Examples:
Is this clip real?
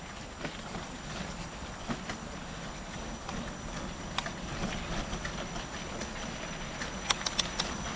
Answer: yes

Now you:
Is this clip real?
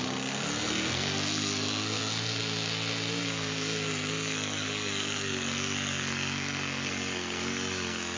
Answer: no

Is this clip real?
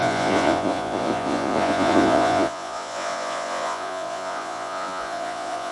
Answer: no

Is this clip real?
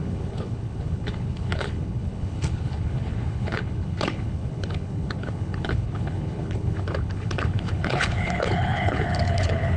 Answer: no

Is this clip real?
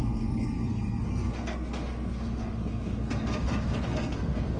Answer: no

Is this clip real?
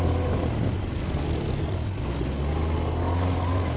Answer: yes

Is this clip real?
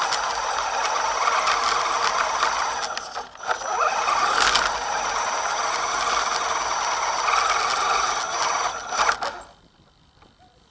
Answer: yes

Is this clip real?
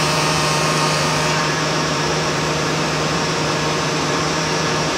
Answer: no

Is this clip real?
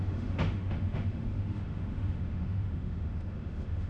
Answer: no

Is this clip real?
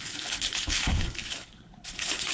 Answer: no